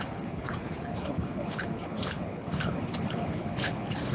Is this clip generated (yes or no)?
yes